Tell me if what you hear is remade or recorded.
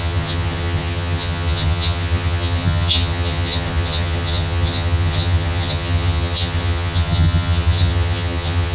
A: remade